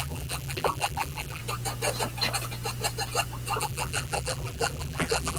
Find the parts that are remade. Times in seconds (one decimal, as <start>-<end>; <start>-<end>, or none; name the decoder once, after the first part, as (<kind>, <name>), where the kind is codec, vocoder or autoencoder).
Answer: 0.0-1.4 (vocoder, BigVGAN v2); 3.6-5.4